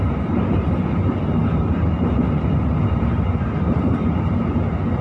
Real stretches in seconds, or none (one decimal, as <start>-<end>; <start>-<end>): 0.0-1.4; 4.4-5.0